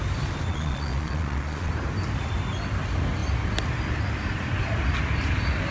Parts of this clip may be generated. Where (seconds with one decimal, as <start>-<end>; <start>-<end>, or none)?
0.5-1.7